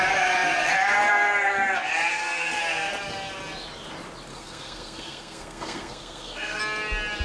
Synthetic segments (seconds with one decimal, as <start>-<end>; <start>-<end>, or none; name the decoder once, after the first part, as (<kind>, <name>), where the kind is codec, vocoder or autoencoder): 2.1-2.6 (codec, SNAC); 4.3-6.6